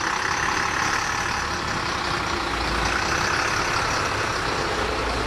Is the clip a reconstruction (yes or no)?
no